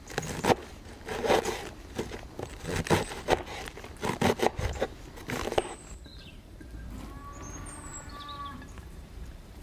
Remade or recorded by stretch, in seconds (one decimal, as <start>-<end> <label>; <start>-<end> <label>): 0.0-6.1 recorded; 6.1-6.9 remade; 6.9-7.9 recorded; 7.9-9.6 remade